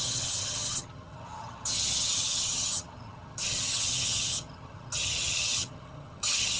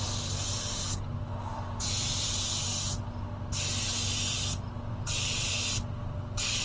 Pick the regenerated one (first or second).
first